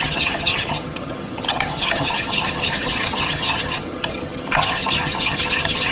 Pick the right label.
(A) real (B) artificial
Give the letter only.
B